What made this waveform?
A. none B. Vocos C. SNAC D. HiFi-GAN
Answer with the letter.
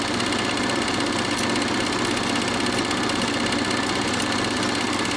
A